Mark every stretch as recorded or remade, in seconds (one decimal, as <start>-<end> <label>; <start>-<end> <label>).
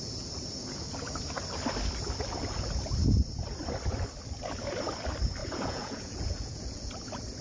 0.0-5.4 recorded; 5.4-6.9 remade; 6.9-7.4 recorded